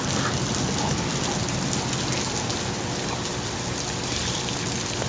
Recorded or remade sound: recorded